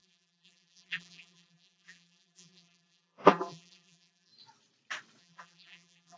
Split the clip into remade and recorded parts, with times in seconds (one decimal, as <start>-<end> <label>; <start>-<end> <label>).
0.0-4.3 remade; 4.3-5.2 recorded; 5.2-6.2 remade